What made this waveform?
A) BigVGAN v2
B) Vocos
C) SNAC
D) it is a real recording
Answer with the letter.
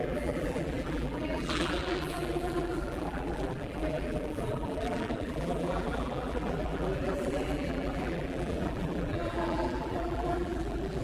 A